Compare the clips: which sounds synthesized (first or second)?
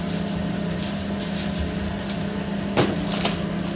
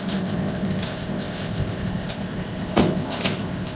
second